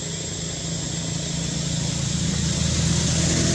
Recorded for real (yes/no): yes